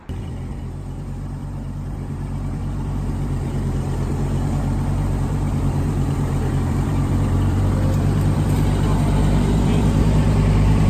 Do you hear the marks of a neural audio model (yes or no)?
yes